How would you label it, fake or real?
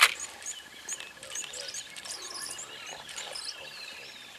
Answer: real